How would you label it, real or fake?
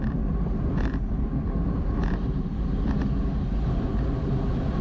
real